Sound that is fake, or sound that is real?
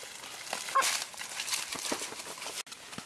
real